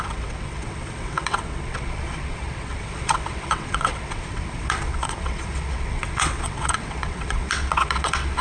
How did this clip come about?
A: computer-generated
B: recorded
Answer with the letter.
A